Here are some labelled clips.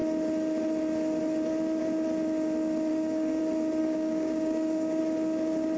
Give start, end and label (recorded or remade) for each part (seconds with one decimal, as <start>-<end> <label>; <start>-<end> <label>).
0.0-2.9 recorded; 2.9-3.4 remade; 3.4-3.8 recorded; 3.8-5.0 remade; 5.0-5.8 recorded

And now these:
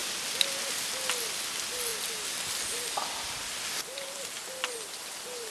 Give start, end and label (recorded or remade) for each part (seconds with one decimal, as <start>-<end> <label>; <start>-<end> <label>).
0.0-1.9 recorded; 1.9-5.5 remade

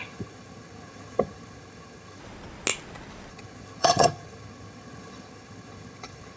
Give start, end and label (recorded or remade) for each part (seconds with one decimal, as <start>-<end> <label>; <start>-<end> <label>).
0.0-2.2 remade; 2.2-3.3 recorded; 3.3-6.4 remade

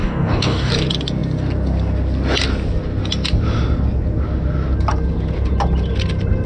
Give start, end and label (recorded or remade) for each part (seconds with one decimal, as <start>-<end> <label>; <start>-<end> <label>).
0.0-0.7 remade; 0.7-6.5 recorded